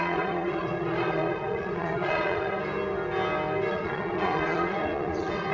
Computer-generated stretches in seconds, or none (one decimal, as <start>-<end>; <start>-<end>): 0.0-2.6; 3.7-5.5